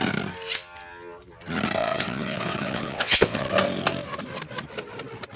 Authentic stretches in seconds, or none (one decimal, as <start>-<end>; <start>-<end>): 0.0-1.8; 3.5-5.4